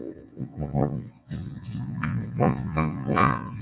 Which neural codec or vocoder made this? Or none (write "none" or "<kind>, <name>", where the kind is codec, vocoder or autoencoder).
vocoder, Vocos